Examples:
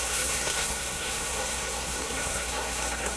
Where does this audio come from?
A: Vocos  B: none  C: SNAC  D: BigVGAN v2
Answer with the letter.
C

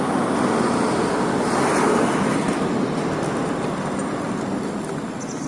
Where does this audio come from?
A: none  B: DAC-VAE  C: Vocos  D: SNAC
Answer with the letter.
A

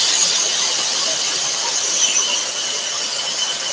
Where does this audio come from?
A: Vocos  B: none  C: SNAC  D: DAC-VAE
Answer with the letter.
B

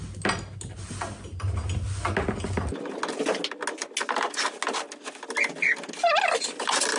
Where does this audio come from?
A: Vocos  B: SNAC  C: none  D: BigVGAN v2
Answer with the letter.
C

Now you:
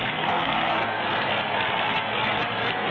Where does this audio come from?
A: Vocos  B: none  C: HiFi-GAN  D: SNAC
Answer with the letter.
D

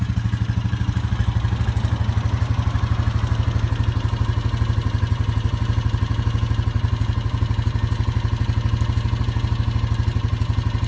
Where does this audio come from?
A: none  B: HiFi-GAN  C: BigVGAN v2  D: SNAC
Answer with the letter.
A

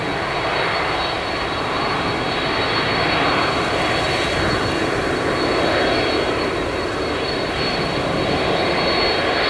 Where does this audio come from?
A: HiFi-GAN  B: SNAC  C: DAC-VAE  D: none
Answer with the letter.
D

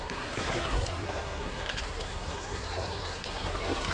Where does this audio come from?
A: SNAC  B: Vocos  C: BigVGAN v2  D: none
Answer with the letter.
A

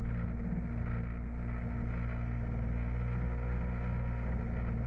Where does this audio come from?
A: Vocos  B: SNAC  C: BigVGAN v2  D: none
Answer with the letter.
D